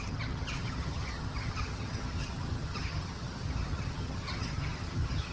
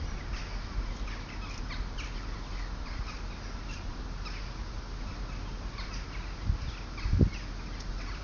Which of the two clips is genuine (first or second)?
second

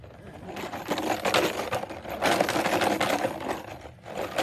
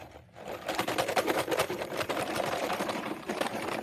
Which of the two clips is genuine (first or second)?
first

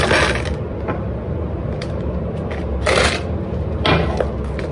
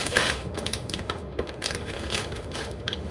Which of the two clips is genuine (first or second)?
first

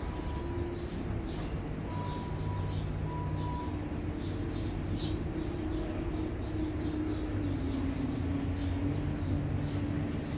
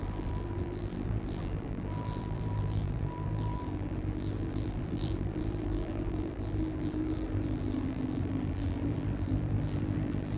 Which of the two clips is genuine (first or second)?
first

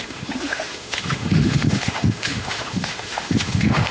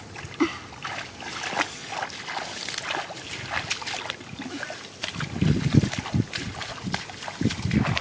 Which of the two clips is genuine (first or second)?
second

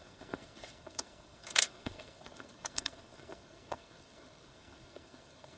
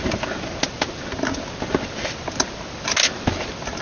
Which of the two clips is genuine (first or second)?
second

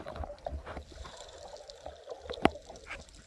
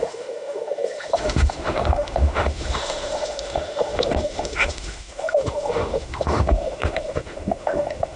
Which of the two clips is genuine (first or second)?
first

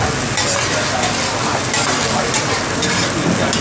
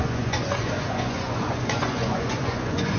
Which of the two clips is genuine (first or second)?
first